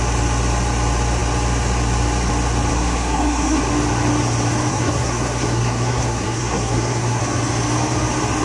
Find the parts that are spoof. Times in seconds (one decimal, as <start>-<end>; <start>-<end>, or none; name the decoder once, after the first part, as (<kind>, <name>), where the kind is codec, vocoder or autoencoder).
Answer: 2.7-3.6 (codec, SNAC); 4.7-7.2